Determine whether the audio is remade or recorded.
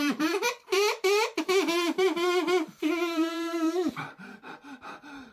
remade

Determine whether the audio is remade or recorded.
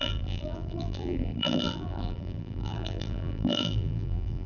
remade